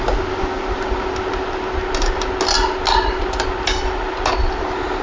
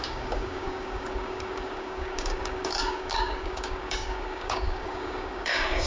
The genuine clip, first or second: first